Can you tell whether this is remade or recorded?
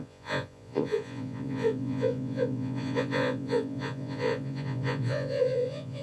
remade